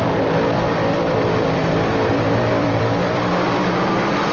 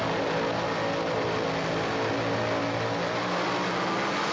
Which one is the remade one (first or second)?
first